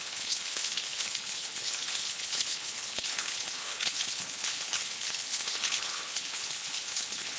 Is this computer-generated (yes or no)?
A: yes